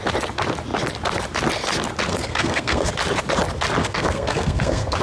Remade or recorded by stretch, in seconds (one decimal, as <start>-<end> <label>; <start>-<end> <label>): 0.0-2.1 recorded; 2.1-2.9 remade; 2.9-3.8 recorded; 3.8-5.0 remade